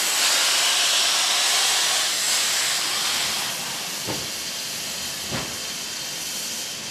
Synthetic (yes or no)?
no